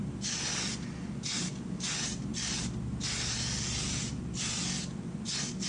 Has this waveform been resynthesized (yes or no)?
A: no